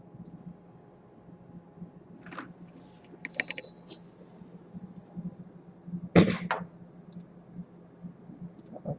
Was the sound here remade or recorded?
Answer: recorded